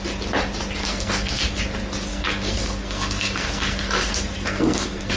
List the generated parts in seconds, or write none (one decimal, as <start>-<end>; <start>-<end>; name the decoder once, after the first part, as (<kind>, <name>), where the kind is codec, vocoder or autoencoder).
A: 0.8-1.6 (codec, SNAC); 2.1-5.2